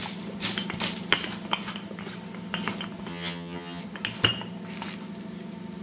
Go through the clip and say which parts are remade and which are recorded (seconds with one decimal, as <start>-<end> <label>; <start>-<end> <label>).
0.0-3.1 recorded; 3.1-3.8 remade; 3.8-5.8 recorded